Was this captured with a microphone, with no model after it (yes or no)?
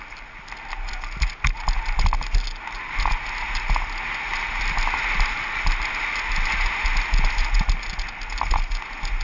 yes